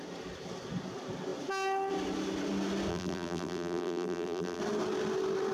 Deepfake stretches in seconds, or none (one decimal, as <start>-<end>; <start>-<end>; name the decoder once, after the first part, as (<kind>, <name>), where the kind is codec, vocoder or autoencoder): 2.9-4.6 (vocoder, BigVGAN v2)